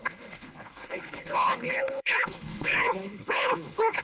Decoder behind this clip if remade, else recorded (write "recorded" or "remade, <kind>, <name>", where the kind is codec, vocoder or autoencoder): remade, codec, HILCodec